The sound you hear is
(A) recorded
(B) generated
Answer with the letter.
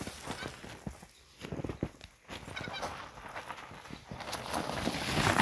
A